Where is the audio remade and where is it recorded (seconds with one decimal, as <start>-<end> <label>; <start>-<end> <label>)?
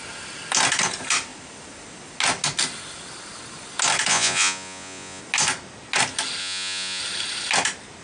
0.0-4.1 recorded; 4.1-5.2 remade; 5.2-6.4 recorded; 6.4-7.0 remade; 7.0-8.0 recorded